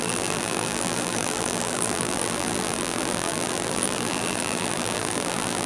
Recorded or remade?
remade